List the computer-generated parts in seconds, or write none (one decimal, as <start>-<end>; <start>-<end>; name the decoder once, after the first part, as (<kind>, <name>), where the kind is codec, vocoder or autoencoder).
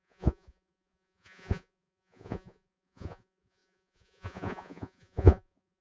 0.0-5.8 (vocoder, Vocos)